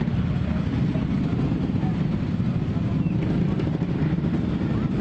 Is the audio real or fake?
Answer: real